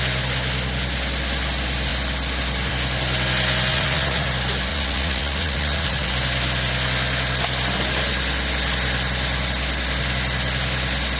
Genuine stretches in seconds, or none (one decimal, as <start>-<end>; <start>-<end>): 0.0-3.7; 4.3-4.7; 6.1-11.2

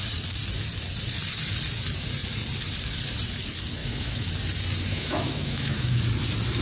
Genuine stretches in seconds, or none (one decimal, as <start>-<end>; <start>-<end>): 0.0-3.8; 4.3-4.9; 6.0-6.6

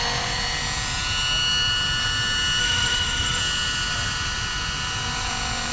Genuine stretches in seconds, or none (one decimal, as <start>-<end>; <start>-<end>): 0.0-2.6; 3.4-5.7

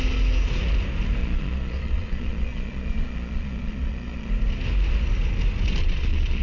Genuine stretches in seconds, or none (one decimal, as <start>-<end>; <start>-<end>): 0.0-1.2; 4.3-5.8

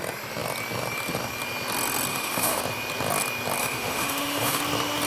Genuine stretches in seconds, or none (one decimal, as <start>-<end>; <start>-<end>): 0.0-2.1; 2.6-3.6; 4.6-5.1